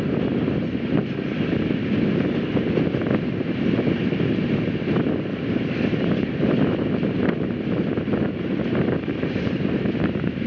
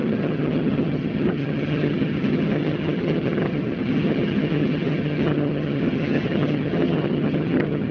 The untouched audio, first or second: first